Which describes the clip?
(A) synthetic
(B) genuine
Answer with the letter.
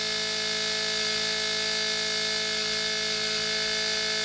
B